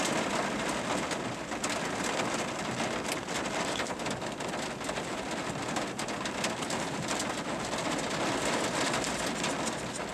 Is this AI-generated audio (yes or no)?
no